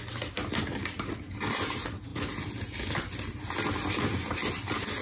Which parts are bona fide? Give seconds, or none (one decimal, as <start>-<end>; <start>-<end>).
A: 0.0-5.0